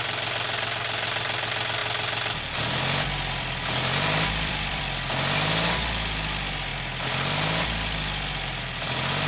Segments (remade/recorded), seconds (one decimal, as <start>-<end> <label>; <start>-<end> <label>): 0.0-1.8 recorded; 1.8-4.8 remade; 4.8-9.3 recorded